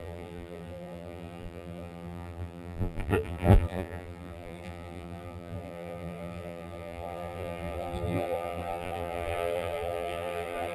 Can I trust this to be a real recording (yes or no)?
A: no